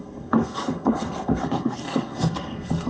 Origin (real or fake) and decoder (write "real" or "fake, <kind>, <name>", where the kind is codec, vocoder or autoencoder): fake, codec, SNAC